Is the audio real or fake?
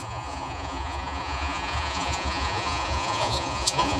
fake